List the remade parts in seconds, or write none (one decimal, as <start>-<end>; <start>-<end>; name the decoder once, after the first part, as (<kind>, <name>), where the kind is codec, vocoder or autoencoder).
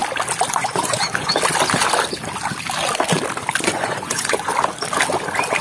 0.5-1.3 (vocoder, Vocos); 3.6-4.5